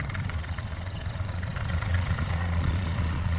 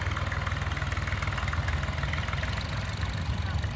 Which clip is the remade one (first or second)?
first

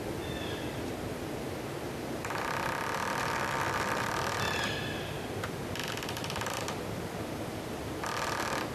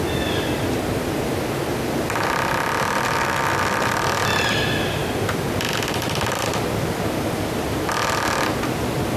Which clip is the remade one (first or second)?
first